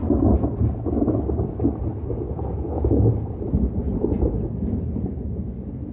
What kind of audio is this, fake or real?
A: real